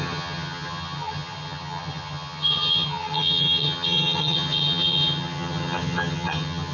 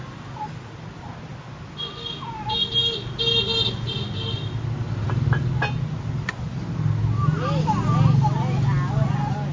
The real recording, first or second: second